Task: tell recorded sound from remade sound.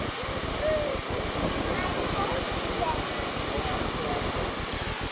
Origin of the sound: recorded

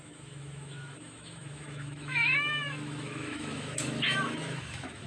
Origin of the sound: remade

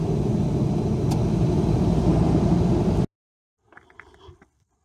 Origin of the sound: recorded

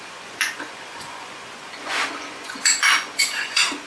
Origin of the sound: remade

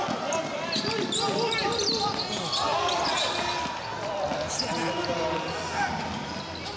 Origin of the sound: recorded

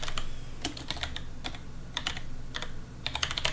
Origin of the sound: recorded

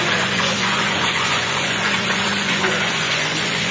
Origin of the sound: remade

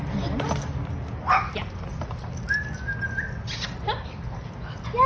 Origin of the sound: recorded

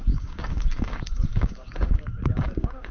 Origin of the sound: remade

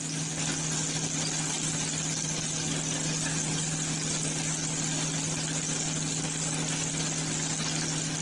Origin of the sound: recorded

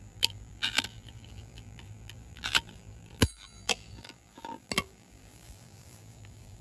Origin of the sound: remade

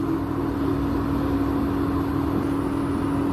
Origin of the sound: recorded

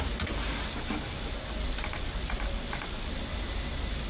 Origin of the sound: recorded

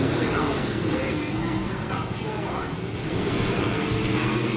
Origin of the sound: remade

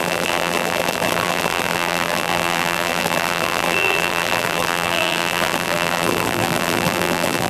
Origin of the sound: remade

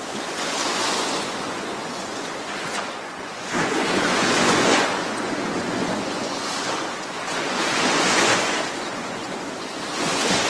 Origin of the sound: remade